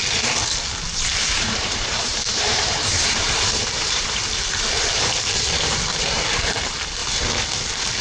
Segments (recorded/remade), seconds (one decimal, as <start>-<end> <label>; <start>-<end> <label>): 0.0-0.9 recorded; 0.9-4.2 remade; 4.2-8.0 recorded